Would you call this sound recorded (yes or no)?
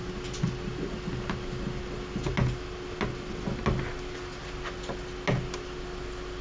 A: yes